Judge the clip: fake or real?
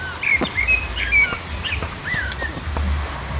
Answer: real